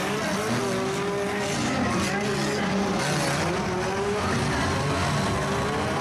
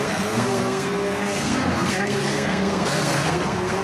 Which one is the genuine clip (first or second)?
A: first